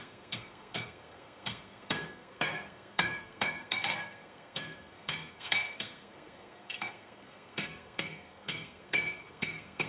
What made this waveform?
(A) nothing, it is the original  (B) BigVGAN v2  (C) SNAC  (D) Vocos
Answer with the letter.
C